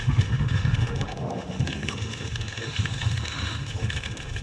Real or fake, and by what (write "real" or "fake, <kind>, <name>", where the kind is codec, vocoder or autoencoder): fake, autoencoder, DAC-VAE